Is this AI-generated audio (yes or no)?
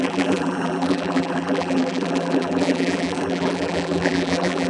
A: yes